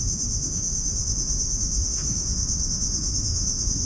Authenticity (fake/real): fake